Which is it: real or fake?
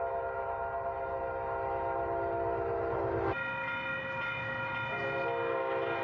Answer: real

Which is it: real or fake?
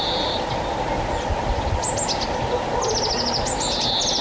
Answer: real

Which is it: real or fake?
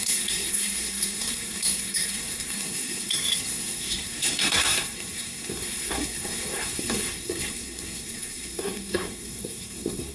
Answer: fake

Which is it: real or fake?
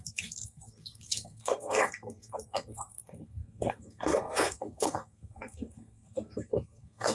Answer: fake